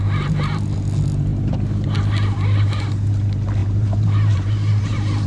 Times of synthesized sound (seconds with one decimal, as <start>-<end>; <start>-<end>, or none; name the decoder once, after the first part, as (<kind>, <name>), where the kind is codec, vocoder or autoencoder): 3.6-5.3 (vocoder, BigVGAN v2)